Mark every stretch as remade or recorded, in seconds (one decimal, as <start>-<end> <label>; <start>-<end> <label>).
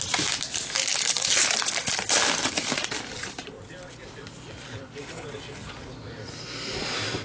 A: 0.0-0.9 recorded; 0.9-5.1 remade; 5.1-7.2 recorded